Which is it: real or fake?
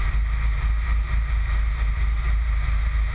real